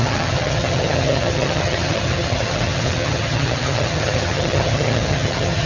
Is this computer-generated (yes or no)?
yes